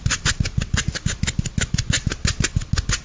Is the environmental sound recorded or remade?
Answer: recorded